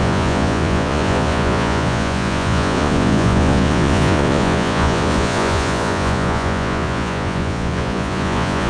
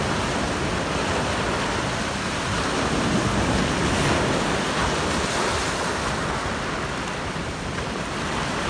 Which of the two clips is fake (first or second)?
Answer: first